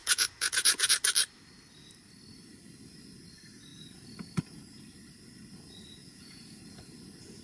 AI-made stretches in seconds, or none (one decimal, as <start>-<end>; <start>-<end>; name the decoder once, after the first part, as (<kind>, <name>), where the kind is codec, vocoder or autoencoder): 0.0-0.9 (vocoder, Vocos); 6.0-6.6